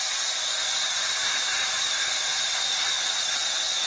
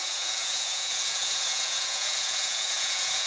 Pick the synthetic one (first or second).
second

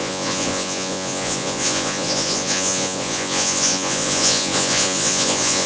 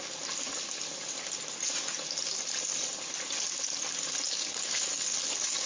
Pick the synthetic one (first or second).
first